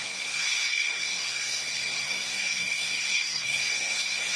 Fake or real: fake